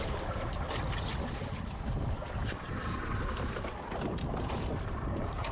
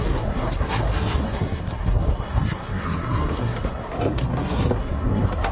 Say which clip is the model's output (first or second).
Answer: second